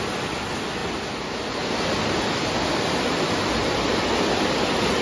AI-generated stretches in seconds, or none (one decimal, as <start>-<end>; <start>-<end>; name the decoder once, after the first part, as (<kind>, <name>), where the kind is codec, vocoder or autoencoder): none